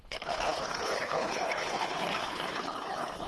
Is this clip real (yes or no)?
no